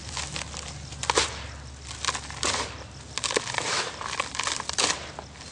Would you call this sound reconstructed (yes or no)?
no